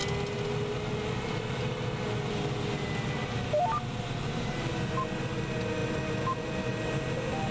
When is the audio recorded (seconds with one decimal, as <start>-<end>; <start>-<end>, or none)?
0.0-7.5